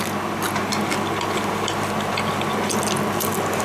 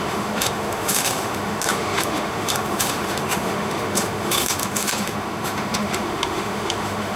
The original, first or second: first